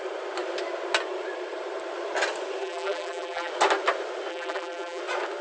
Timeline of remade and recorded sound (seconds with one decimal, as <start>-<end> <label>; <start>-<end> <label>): 0.0-2.6 recorded; 2.6-3.5 remade; 3.5-4.3 recorded; 4.3-5.0 remade; 5.0-5.4 recorded